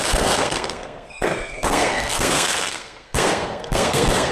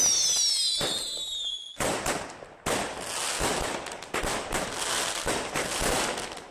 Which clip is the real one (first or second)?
second